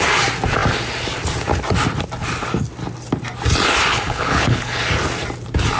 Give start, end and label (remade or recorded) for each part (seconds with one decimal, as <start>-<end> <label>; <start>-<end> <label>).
0.0-3.9 recorded; 3.9-4.8 remade; 4.8-5.8 recorded